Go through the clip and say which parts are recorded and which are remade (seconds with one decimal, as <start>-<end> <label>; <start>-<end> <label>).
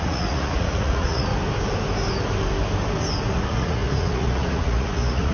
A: 0.0-1.3 remade; 1.3-3.3 recorded; 3.3-5.3 remade